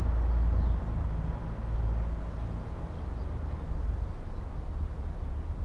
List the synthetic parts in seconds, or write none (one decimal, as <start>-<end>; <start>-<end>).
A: none